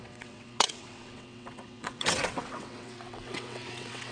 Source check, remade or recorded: remade